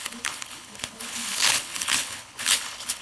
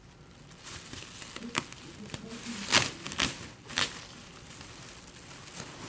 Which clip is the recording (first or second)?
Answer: second